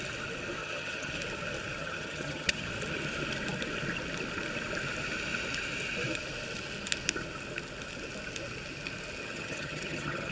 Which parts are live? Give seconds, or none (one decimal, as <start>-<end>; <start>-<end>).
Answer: 0.0-0.6; 1.1-1.8; 2.7-9.2